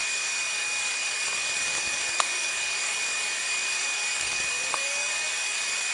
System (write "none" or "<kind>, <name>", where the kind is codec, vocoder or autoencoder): codec, DAC